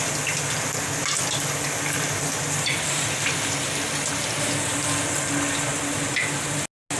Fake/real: real